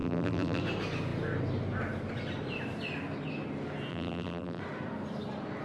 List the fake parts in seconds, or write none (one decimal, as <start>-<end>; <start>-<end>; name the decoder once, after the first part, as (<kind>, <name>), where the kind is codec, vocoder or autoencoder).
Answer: 0.0-0.6 (vocoder, BigVGAN v2); 3.9-4.6